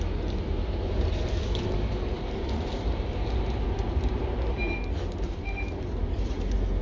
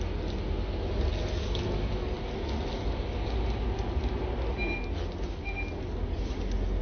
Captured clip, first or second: second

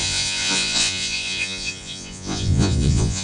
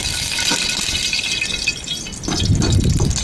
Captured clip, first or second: second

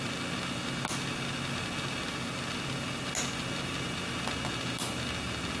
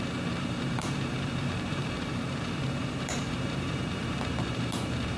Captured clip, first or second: first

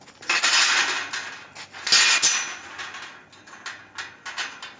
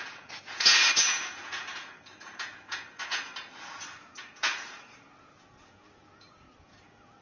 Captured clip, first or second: first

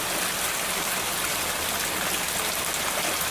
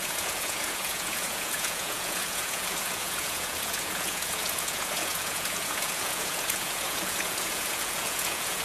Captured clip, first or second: first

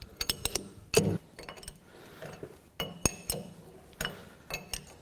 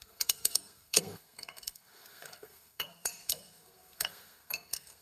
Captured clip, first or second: first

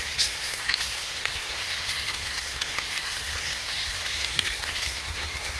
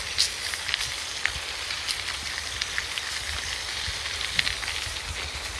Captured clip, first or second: second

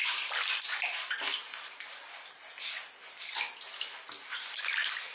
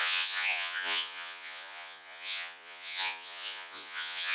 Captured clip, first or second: first